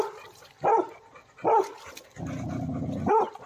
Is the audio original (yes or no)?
yes